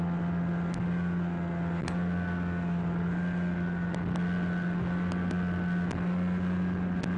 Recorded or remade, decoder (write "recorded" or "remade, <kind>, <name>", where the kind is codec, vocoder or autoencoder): recorded